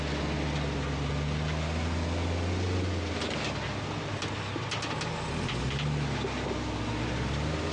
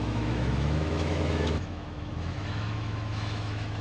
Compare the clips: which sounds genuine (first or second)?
first